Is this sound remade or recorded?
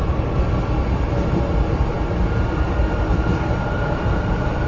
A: recorded